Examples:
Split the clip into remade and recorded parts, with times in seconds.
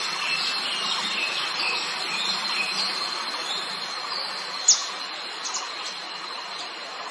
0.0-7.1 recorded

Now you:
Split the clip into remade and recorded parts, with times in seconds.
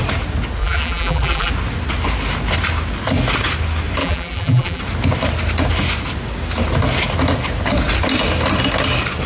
0.0-0.6 recorded; 0.6-1.5 remade; 1.5-4.0 recorded; 4.0-4.8 remade; 4.8-9.3 recorded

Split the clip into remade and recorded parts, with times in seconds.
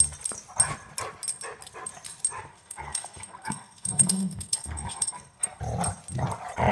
0.0-2.5 recorded; 2.5-5.6 remade; 5.6-6.7 recorded